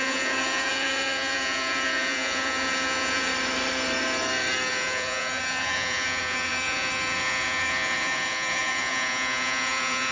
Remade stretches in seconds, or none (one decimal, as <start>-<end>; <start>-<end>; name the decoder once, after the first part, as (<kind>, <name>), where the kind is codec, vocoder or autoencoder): 0.0-3.3 (vocoder, Vocos); 4.7-10.1